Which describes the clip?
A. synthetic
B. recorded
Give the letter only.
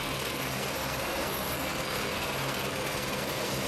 A